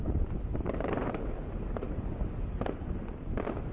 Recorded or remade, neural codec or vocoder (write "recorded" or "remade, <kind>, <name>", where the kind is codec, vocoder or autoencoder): remade, vocoder, BigVGAN v2